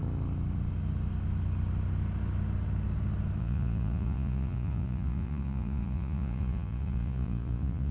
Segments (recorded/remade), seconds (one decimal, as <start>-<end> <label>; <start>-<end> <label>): 0.0-3.4 recorded; 3.4-7.9 remade